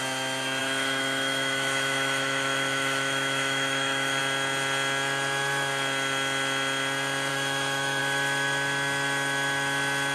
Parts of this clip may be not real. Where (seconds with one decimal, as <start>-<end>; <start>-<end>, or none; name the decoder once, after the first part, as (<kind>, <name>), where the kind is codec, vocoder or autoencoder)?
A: 0.6-4.2 (autoencoder, DAC-VAE); 7.3-8.0